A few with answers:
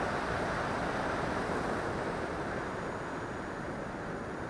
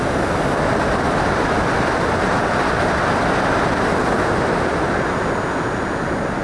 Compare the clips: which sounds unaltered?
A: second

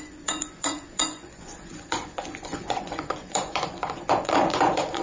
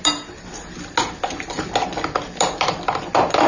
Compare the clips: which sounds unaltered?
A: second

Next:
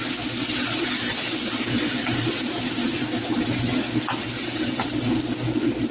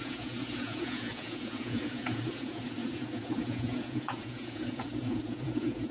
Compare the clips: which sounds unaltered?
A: first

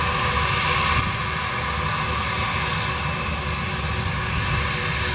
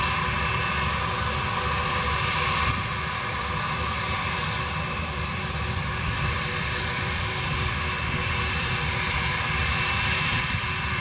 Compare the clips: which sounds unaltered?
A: first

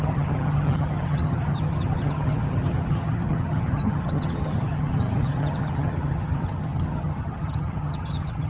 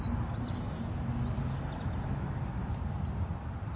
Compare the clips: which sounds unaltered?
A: second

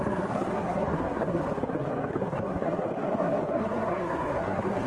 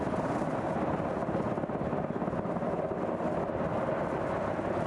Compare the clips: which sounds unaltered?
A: second